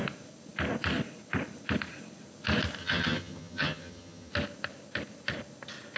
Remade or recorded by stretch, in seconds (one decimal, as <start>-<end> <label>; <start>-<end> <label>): 0.0-2.8 recorded; 2.8-4.3 remade; 4.3-6.0 recorded